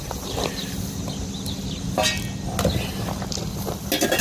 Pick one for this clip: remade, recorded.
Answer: recorded